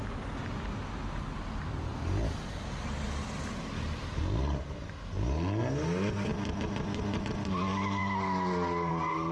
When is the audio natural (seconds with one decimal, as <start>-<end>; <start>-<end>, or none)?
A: 0.0-9.3